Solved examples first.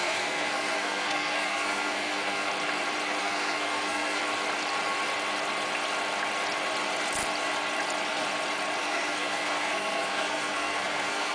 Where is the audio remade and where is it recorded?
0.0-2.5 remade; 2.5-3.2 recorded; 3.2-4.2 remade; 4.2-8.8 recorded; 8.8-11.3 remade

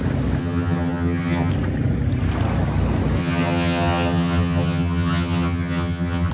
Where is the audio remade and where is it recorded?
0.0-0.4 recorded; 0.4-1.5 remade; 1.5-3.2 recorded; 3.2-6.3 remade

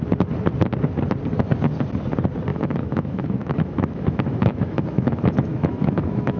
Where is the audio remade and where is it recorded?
0.0-2.5 recorded; 2.5-6.4 remade

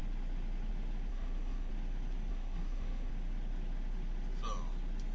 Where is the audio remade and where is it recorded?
0.0-1.1 recorded; 1.1-1.7 remade; 1.7-2.3 recorded; 2.3-3.1 remade; 3.1-5.1 recorded

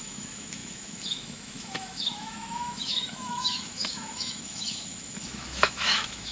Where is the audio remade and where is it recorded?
0.0-6.3 remade

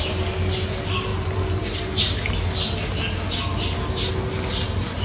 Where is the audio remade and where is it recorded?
0.0-5.0 recorded

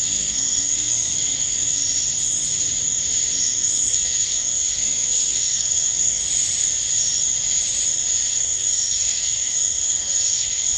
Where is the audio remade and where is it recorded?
0.0-1.8 remade; 1.8-3.4 recorded; 3.4-6.2 remade; 6.2-8.3 recorded; 8.3-10.8 remade